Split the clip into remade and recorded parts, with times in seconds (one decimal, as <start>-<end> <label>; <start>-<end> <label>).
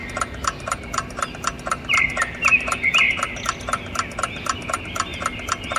0.0-5.8 recorded